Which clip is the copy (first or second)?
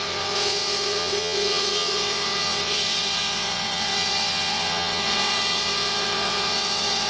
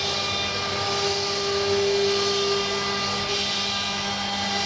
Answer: first